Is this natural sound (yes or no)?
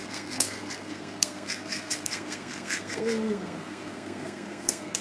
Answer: no